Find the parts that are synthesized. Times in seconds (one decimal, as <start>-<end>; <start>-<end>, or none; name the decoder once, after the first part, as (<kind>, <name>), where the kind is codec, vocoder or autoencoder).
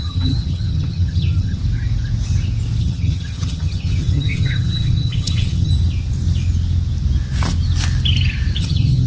0.0-1.6 (vocoder, HiFi-GAN); 2.8-5.7; 8.6-9.1